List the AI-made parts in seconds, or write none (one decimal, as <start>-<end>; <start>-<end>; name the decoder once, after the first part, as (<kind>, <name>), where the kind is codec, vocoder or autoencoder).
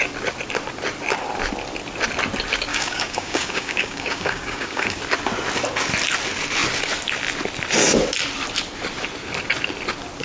2.7-5.0 (codec, DAC)